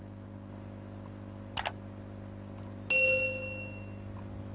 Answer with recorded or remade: recorded